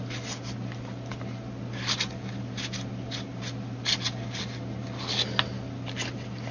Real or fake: real